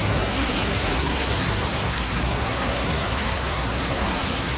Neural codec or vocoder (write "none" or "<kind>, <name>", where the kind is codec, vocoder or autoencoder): codec, SNAC